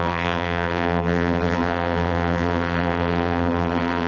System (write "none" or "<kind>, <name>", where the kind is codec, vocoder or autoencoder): vocoder, BigVGAN v2